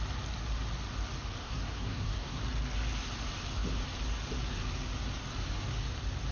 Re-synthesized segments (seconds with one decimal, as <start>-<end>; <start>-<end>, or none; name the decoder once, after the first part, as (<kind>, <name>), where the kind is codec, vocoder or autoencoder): 1.4-2.4 (codec, SNAC)